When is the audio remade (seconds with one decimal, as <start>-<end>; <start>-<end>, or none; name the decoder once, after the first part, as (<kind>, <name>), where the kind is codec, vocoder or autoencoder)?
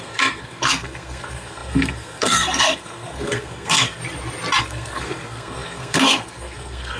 0.0-4.0 (codec, SNAC); 4.6-7.0